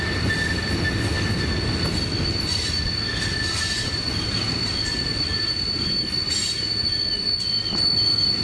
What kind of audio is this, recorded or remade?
recorded